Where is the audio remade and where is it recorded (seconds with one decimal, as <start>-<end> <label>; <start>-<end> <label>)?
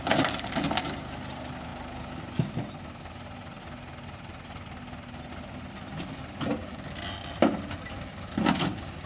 0.0-9.1 recorded